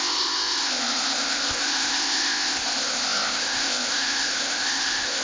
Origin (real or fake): fake